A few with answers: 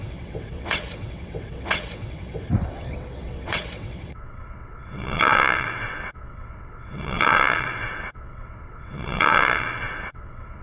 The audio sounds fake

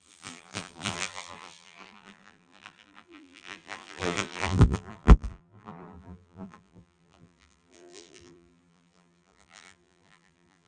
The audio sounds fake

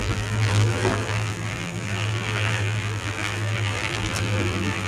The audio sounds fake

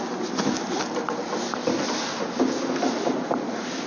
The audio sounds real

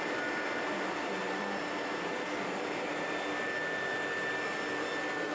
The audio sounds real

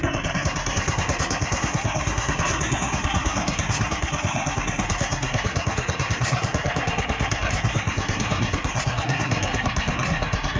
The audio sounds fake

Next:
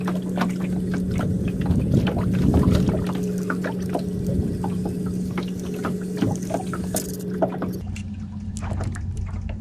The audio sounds real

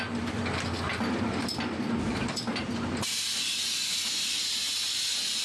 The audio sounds real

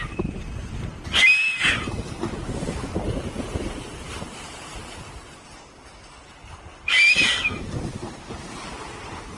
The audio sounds real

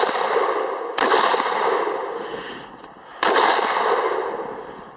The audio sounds real